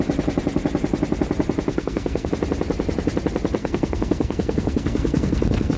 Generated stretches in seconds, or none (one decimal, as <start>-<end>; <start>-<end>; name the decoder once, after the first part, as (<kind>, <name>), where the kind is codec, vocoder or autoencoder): 1.7-2.3 (codec, SNAC); 3.6-5.8